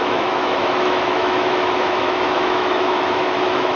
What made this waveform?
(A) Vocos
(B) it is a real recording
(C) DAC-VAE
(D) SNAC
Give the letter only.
C